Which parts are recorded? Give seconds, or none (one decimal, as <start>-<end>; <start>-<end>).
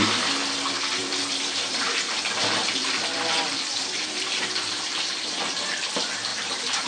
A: 0.0-1.0; 2.2-3.7; 5.4-6.3